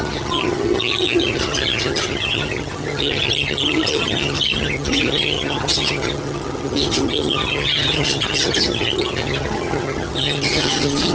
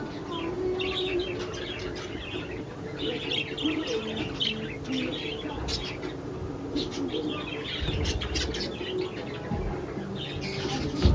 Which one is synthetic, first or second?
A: first